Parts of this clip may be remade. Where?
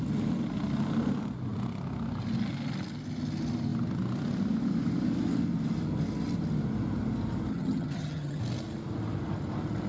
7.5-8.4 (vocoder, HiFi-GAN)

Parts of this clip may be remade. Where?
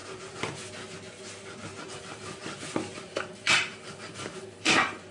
1.8-2.4 (vocoder, BigVGAN v2); 3.0-5.1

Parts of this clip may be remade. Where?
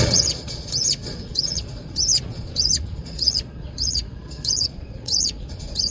0.0-5.9 (vocoder, Vocos)